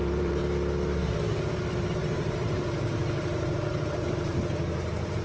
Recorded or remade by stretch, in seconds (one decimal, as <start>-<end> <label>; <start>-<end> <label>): 0.0-0.4 remade; 0.4-1.9 recorded; 1.9-5.2 remade